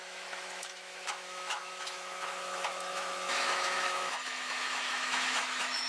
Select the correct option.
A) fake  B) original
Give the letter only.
A